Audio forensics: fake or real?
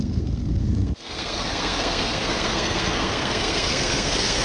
fake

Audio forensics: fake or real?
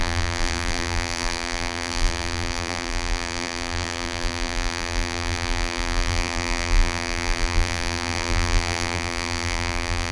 fake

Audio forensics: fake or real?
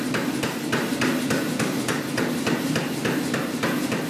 real